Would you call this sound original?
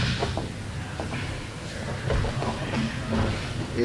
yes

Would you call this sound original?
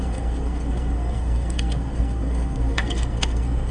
no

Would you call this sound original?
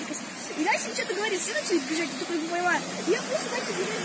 yes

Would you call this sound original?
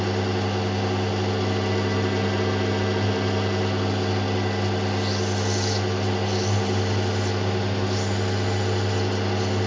yes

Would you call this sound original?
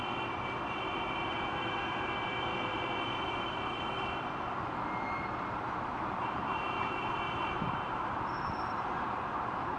no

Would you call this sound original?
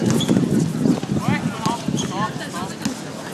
yes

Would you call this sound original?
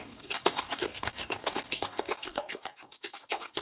no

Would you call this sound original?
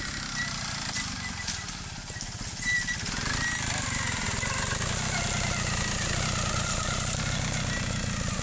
yes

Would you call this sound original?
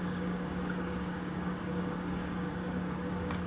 no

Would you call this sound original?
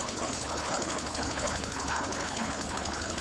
no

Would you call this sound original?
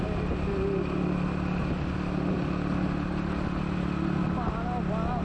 yes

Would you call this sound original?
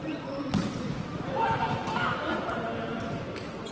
yes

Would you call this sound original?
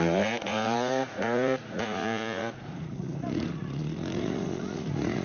no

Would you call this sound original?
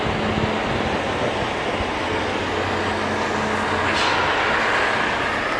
yes